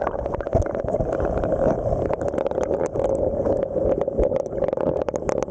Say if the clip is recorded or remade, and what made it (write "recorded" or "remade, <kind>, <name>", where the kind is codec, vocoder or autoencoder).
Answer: recorded